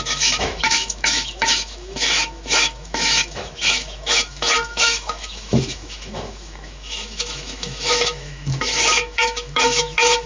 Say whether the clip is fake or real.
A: fake